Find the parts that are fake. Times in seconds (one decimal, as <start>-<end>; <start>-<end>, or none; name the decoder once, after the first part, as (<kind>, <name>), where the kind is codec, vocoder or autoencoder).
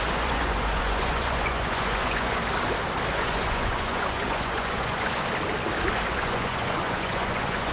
0.0-2.4 (vocoder, Vocos); 3.1-5.2; 6.1-7.7